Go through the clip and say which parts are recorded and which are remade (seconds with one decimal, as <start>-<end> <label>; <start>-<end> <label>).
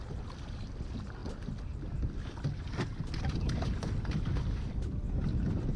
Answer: 0.0-5.8 recorded